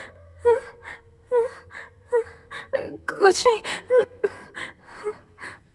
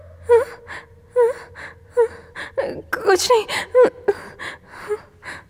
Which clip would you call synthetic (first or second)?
first